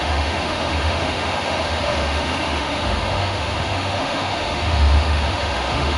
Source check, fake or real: fake